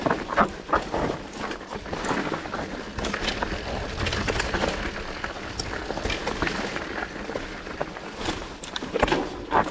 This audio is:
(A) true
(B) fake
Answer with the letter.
A